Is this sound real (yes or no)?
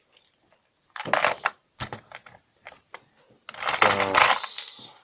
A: yes